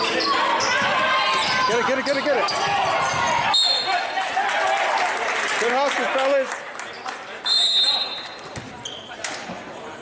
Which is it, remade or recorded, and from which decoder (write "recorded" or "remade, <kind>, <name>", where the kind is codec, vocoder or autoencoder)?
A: recorded